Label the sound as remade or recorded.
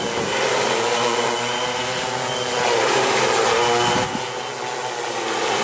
recorded